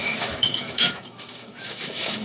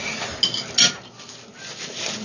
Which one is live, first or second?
second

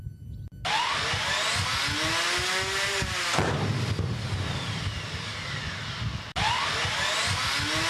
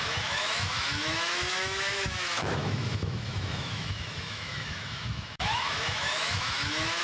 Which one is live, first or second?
first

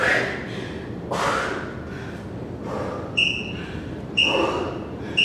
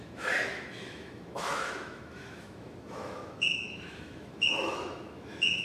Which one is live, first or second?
first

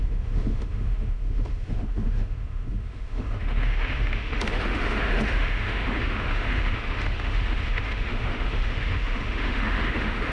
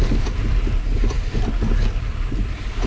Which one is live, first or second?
second